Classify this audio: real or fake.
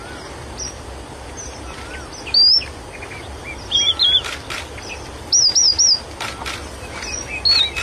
real